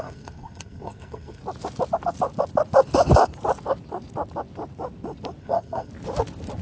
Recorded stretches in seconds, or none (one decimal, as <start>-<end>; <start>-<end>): 1.4-5.4; 5.9-6.6